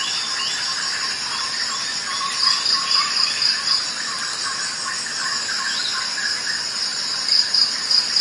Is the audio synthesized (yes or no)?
no